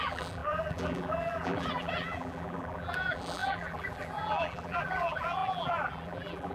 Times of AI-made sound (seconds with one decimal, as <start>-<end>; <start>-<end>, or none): 0.0-6.5